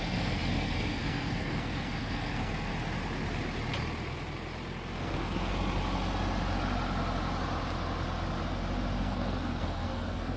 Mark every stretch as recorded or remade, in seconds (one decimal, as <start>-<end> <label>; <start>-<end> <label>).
0.0-2.7 remade; 2.7-5.0 recorded; 5.0-5.5 remade; 5.5-9.0 recorded; 9.0-10.4 remade